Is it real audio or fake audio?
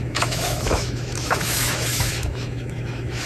fake